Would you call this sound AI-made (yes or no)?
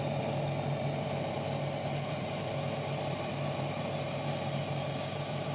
no